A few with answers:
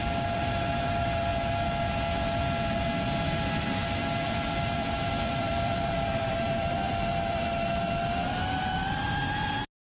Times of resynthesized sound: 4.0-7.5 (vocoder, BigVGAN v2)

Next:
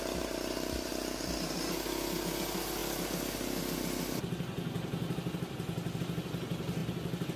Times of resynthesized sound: none

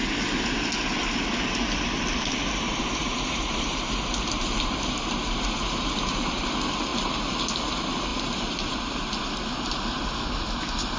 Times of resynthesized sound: 3.0-6.4 (vocoder, BigVGAN v2); 6.9-7.6